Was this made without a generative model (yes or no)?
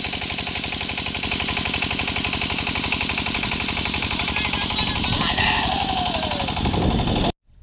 yes